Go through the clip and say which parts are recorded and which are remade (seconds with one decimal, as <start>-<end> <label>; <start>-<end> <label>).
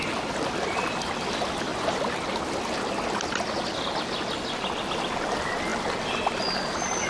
0.0-7.1 recorded